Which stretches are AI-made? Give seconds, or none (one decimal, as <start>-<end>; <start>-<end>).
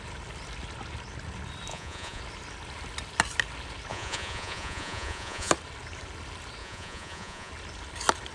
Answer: 1.7-2.2; 3.9-5.5; 6.6-7.5